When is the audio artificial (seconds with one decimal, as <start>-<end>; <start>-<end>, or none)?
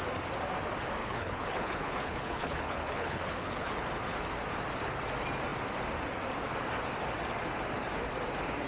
1.0-3.7